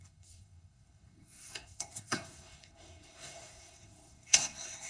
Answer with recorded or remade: remade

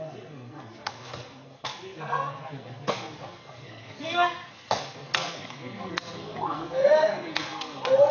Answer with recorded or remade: remade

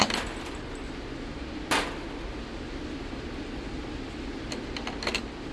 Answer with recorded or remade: recorded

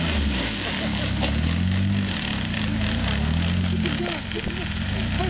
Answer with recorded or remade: recorded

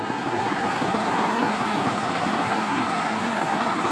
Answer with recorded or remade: remade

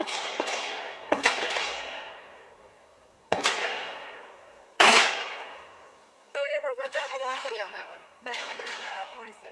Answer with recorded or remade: remade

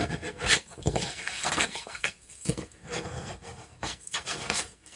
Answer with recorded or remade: remade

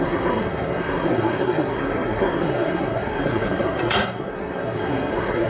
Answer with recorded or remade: remade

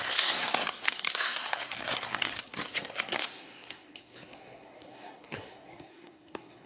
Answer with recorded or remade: remade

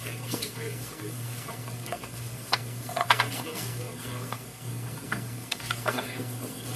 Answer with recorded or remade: remade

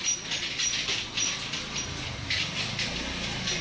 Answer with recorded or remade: recorded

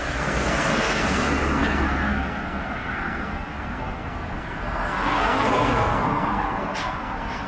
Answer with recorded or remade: remade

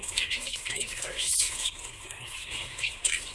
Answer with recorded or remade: remade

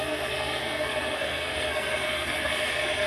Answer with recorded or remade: remade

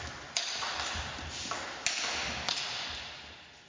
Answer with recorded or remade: recorded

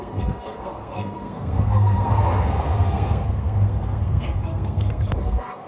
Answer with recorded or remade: remade